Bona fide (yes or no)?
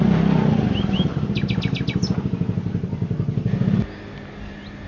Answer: yes